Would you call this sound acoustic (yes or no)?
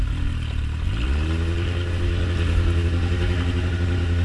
yes